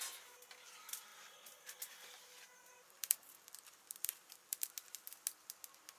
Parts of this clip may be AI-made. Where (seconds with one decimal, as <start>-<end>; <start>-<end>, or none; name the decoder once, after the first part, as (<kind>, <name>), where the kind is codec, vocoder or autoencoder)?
1.1-4.7 (vocoder, BigVGAN v2)